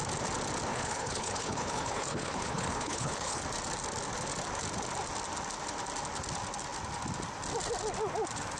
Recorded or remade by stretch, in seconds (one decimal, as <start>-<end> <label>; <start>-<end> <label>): 0.0-0.7 recorded; 0.7-3.4 remade; 3.4-8.6 recorded